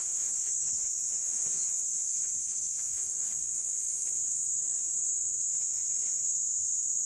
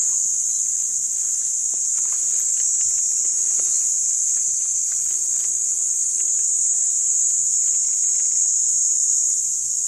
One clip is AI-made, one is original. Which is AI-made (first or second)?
first